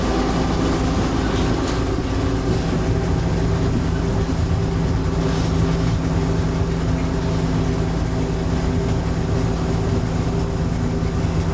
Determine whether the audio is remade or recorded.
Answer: recorded